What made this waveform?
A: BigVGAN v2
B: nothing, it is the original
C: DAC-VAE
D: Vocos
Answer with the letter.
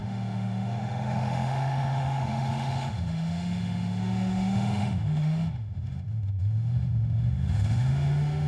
C